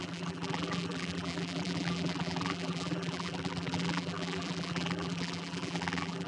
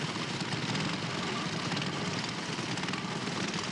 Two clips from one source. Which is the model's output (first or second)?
first